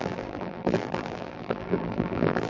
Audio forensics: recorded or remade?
remade